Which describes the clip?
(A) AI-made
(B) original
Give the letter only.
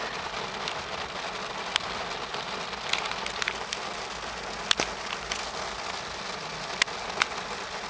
B